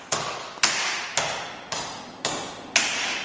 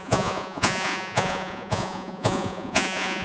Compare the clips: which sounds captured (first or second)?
first